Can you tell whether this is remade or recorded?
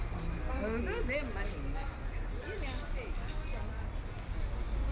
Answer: recorded